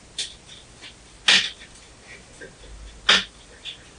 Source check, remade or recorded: recorded